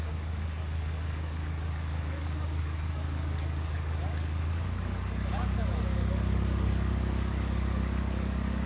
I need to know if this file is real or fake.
fake